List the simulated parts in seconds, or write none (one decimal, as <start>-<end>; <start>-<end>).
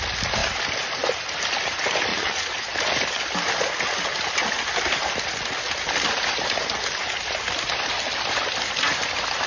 2.1-2.7